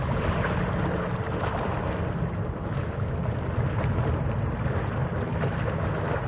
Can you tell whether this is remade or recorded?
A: recorded